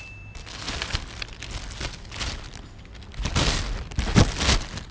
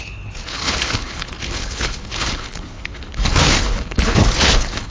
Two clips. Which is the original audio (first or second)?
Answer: first